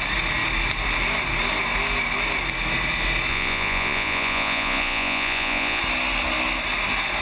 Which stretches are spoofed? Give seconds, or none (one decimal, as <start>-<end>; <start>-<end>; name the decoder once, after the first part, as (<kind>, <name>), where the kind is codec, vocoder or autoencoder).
3.3-5.8 (vocoder, Vocos)